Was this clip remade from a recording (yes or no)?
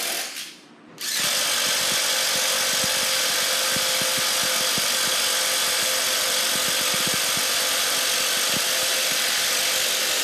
no